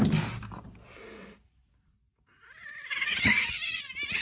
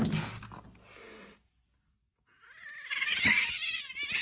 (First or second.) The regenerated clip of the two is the first